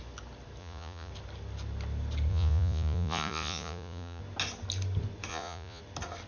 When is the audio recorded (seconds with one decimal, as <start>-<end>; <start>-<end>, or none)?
0.0-0.6; 1.1-2.3; 4.2-5.3; 5.8-6.3